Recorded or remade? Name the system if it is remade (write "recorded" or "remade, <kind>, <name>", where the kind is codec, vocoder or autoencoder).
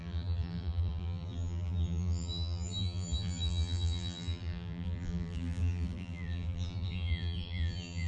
remade, vocoder, BigVGAN v2